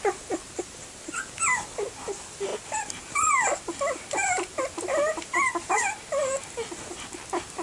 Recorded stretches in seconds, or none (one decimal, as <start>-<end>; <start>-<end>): 0.0-7.6